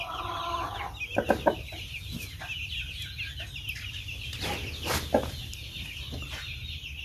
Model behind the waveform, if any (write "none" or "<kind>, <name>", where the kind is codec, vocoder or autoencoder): none